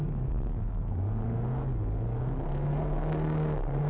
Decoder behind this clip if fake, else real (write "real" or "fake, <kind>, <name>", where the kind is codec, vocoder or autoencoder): fake, codec, SNAC